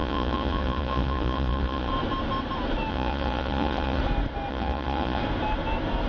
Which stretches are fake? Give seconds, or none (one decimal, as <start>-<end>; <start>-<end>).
0.0-1.9; 2.9-4.0; 4.5-5.2